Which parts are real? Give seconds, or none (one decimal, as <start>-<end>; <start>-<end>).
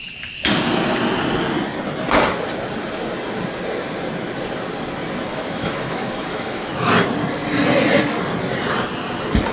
0.0-5.3; 6.9-9.5